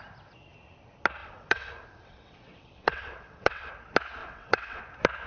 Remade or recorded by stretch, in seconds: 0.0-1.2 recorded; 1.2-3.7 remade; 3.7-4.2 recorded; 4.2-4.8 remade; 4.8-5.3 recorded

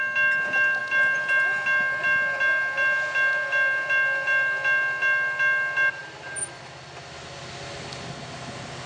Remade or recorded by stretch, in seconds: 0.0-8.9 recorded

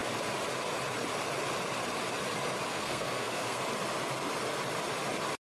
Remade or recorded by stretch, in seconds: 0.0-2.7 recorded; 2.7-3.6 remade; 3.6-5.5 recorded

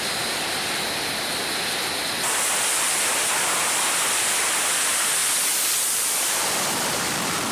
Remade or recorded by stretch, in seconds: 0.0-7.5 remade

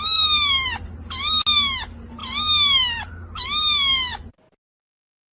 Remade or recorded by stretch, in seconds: 0.0-5.3 recorded

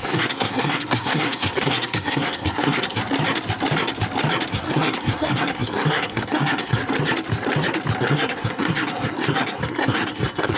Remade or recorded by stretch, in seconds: 0.0-3.0 remade; 3.0-4.5 recorded; 4.5-6.8 remade; 6.8-8.0 recorded; 8.0-10.6 remade

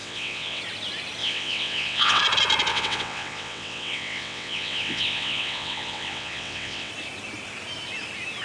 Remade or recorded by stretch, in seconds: 0.0-0.6 remade; 0.6-1.2 recorded; 1.2-2.2 remade; 2.2-2.7 recorded; 2.7-6.9 remade; 6.9-8.4 recorded